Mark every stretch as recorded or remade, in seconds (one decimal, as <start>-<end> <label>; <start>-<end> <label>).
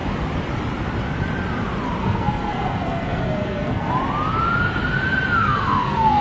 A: 0.0-2.0 recorded; 2.0-3.9 remade; 3.9-5.4 recorded; 5.4-6.2 remade